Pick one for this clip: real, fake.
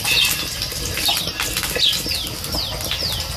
real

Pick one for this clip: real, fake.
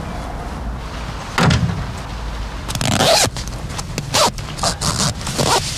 real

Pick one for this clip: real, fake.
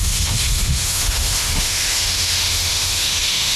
fake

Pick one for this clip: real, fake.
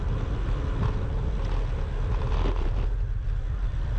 real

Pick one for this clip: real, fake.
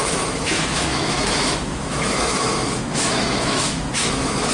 fake